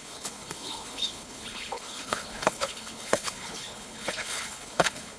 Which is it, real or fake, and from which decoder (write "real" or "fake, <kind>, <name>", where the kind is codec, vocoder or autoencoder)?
fake, codec, HILCodec